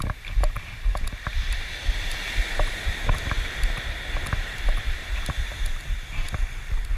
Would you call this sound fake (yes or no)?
no